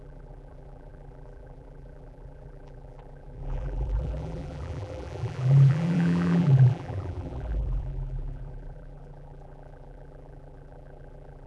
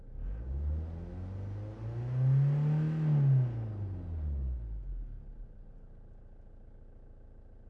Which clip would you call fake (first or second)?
first